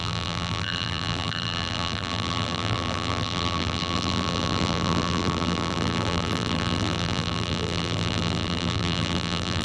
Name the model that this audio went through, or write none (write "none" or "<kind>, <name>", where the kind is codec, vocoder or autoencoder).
vocoder, BigVGAN v2